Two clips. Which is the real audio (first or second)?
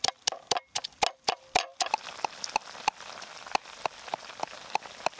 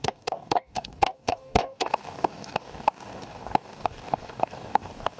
first